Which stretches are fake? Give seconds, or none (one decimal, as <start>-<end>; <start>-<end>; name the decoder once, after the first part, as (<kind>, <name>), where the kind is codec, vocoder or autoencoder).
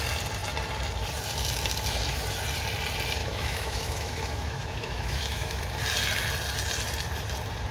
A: 3.2-5.6 (autoencoder, DAC-VAE)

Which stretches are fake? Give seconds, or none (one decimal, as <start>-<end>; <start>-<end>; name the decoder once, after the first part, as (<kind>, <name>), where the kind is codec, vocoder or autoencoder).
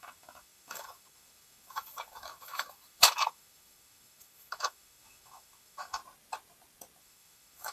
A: 0.0-6.0 (autoencoder, DAC-VAE); 7.0-7.7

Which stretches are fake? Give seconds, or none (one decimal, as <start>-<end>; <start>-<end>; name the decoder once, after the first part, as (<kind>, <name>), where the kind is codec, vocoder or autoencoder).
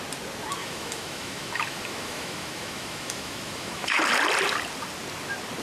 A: 0.6-4.0 (autoencoder, DAC-VAE)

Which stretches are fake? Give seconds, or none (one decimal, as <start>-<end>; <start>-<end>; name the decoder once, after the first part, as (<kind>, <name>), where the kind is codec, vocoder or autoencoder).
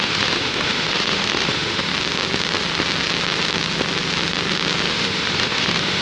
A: 0.0-1.9 (autoencoder, DAC-VAE); 4.9-6.0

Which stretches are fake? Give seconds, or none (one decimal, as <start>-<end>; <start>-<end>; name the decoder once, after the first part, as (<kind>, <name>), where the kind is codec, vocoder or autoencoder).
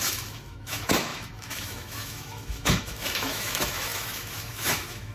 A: 0.0-5.1 (autoencoder, DAC-VAE)